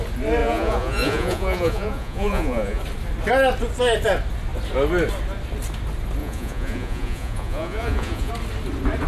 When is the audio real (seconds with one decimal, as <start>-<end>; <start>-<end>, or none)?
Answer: 0.0-0.4; 2.8-6.2; 8.3-9.1